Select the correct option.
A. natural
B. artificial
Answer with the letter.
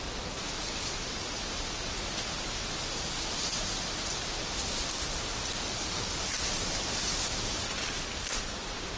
A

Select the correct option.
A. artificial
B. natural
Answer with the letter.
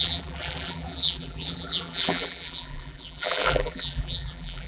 A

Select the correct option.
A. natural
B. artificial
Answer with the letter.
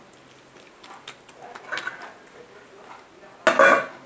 A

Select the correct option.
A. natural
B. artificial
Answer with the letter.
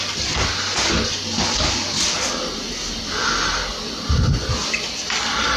A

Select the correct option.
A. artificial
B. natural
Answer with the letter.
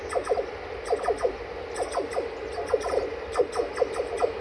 B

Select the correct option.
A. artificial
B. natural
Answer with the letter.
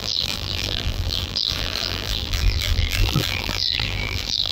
A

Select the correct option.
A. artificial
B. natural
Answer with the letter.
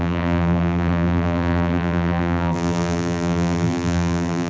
A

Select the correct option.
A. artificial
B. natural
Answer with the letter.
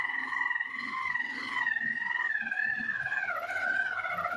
B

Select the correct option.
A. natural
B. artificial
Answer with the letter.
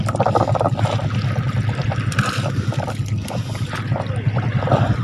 A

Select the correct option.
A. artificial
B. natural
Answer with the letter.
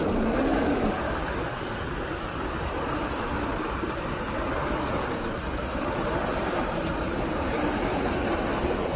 A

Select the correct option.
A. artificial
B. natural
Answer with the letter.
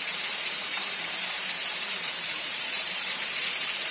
A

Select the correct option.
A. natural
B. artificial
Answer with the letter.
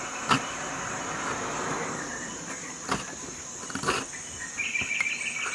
A